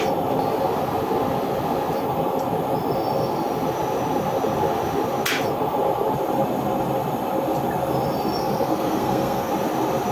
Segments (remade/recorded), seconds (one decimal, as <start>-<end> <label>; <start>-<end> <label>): 0.0-8.4 recorded; 8.4-9.5 remade; 9.5-10.1 recorded